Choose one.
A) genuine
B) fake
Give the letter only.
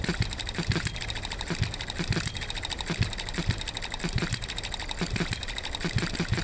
A